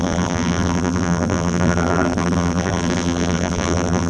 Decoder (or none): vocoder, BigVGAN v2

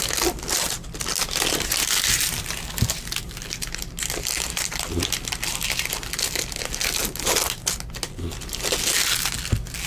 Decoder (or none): none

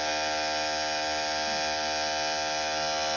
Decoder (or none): none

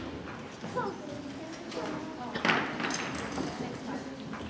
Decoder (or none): none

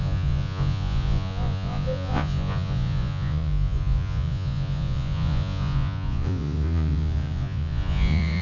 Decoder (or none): vocoder, Vocos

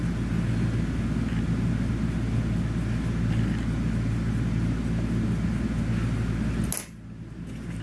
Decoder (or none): none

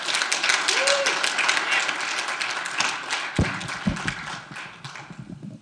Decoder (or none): none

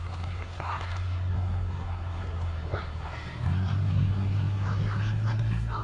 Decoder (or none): codec, SNAC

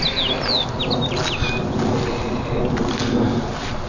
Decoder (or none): none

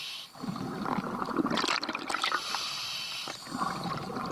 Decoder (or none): none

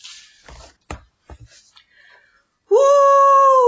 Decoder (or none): none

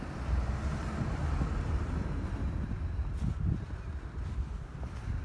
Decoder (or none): none